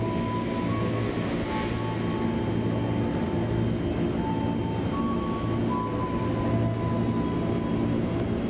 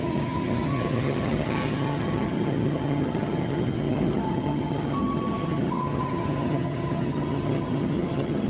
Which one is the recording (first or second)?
first